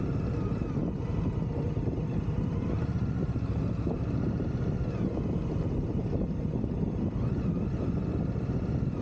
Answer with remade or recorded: recorded